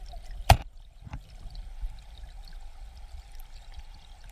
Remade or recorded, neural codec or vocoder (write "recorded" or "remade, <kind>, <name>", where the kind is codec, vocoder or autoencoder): remade, vocoder, BigVGAN v2